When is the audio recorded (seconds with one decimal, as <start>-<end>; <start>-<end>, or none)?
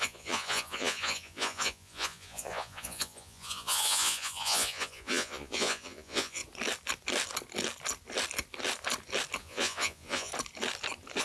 6.4-9.4; 10.3-11.2